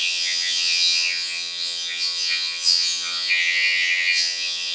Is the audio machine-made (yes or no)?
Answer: yes